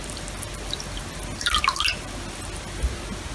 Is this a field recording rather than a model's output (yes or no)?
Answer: yes